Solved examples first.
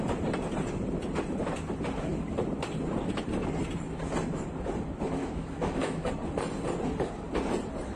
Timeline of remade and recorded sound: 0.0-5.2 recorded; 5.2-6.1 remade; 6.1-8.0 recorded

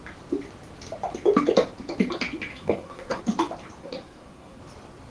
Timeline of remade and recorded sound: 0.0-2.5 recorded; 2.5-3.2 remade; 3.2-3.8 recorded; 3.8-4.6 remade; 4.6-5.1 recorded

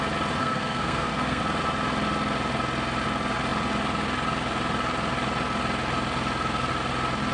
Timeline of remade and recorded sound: 0.0-0.4 recorded; 0.4-1.4 remade; 1.4-7.3 recorded